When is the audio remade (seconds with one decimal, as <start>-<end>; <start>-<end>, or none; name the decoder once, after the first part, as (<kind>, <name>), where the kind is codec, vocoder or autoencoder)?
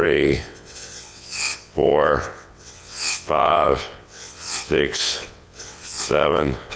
0.0-6.8 (vocoder, WaveNeXt)